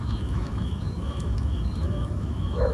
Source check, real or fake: fake